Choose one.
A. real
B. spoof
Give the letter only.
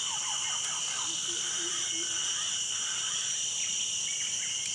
A